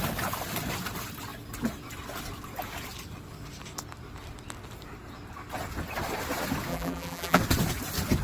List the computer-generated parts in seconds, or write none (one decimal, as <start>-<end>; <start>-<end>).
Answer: 6.7-7.4